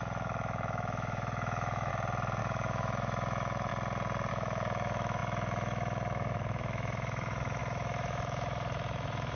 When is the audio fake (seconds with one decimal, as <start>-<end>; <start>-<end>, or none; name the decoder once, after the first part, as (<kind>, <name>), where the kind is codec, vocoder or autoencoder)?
0.0-1.9 (autoencoder, DAC-VAE); 2.4-3.7; 4.3-9.4